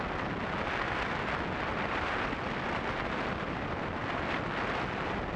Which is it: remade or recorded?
recorded